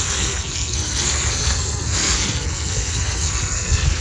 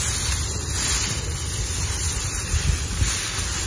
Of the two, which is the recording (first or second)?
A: second